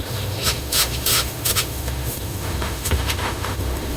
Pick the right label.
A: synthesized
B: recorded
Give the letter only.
A